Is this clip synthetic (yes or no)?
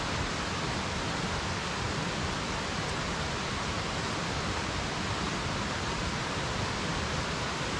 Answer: no